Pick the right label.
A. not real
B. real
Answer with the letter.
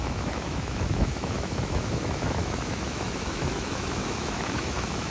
A